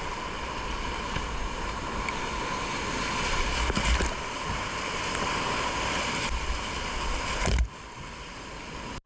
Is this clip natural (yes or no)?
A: yes